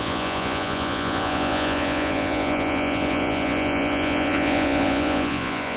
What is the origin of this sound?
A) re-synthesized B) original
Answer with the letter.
A